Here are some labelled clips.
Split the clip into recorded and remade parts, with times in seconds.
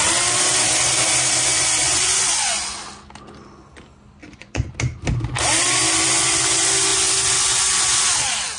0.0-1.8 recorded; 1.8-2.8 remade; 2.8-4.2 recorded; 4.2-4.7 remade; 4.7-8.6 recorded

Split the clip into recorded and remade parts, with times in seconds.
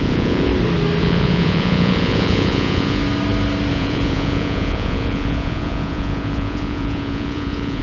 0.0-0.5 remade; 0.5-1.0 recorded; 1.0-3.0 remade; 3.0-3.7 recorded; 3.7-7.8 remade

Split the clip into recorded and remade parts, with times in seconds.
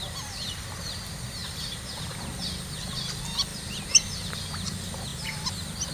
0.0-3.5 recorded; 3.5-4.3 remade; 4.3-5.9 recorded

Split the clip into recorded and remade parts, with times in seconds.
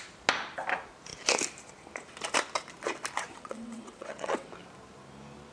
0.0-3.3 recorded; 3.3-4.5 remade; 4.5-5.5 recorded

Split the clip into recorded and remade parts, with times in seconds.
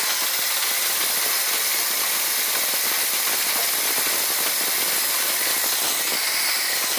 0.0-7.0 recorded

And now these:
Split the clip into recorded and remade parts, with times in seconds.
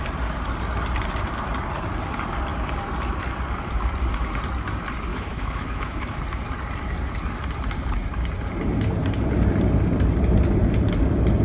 0.0-5.1 recorded; 5.1-6.2 remade; 6.2-11.4 recorded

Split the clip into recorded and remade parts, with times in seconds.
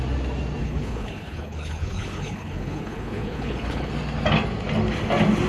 0.0-0.6 recorded; 0.6-3.9 remade; 3.9-5.5 recorded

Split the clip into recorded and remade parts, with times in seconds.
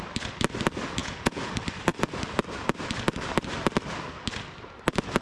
0.0-1.0 recorded; 1.0-1.5 remade; 1.5-5.2 recorded